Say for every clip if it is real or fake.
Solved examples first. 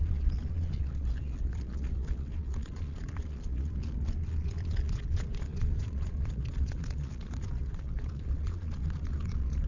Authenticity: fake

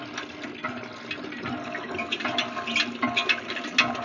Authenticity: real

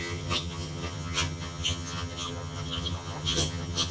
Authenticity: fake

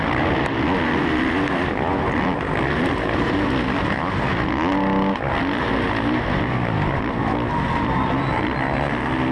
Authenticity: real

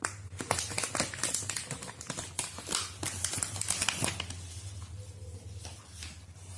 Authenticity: real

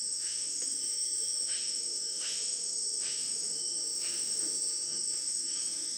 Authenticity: fake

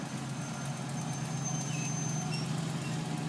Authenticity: real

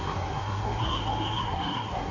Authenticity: fake